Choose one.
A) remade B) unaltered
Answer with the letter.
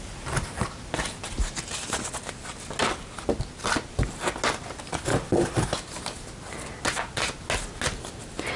B